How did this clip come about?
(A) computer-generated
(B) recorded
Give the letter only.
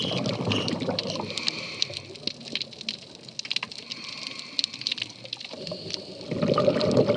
B